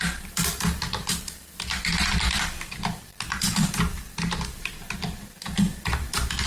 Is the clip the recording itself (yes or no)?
no